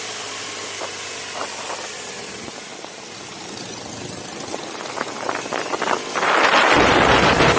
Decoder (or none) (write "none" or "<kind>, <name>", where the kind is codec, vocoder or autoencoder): none